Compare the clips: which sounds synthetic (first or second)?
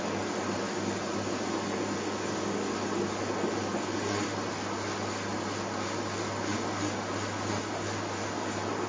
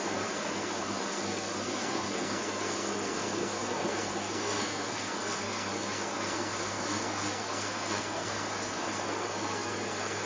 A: second